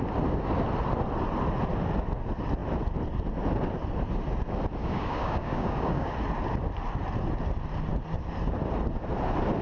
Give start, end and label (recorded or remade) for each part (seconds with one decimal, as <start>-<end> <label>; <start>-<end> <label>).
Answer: 0.0-4.8 recorded; 4.8-6.1 remade; 6.1-9.6 recorded